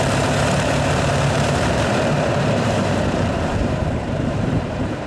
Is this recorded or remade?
remade